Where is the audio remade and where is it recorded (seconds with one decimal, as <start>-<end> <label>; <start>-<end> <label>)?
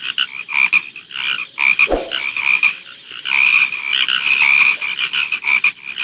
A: 0.0-6.0 recorded